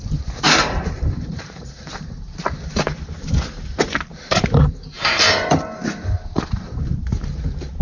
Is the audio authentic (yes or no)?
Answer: no